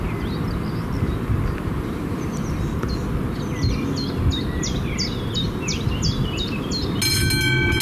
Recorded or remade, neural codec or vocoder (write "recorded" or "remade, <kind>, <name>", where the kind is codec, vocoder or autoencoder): recorded